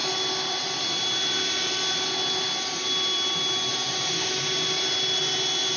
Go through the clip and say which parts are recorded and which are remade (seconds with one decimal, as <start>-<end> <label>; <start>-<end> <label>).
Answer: 0.0-3.7 recorded; 3.7-4.3 remade; 4.3-5.8 recorded